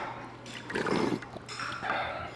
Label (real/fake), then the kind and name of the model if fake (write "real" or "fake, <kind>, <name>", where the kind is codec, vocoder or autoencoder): fake, vocoder, BigVGAN v2